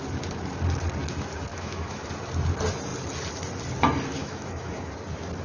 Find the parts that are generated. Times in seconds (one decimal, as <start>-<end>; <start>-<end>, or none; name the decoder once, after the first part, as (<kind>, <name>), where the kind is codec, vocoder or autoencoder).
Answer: 1.5-2.1 (autoencoder, DAC-VAE); 4.2-4.9